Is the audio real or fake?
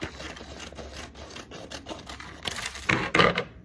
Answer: real